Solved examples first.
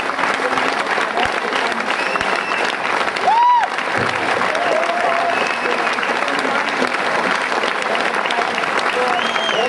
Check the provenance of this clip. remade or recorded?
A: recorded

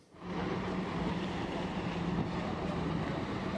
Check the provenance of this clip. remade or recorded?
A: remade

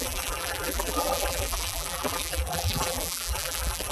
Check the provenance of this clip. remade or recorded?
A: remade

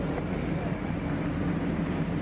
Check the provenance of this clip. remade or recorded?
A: remade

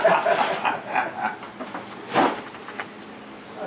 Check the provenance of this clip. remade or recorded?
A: recorded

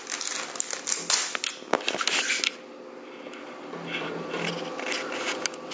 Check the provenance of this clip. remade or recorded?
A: recorded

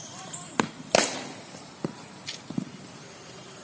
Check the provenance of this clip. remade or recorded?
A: remade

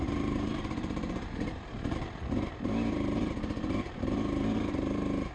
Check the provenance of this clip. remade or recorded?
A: remade